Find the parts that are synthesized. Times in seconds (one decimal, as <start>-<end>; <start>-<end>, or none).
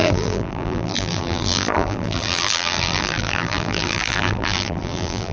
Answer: 0.0-5.3